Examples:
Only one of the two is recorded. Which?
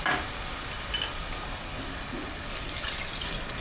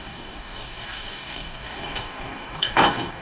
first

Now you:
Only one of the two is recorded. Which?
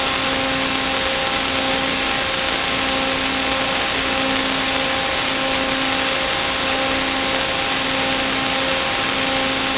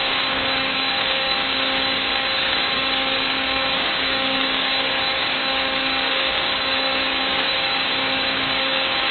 first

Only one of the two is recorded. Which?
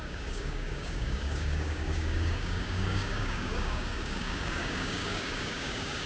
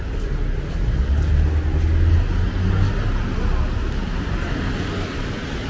second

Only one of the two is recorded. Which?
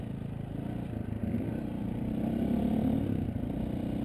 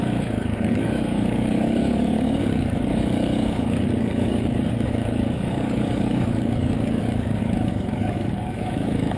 first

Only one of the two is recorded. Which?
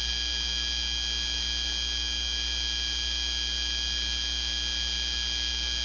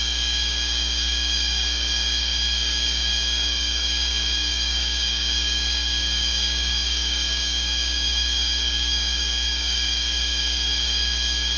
first